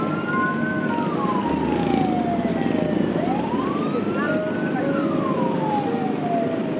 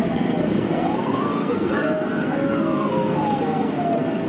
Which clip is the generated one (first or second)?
second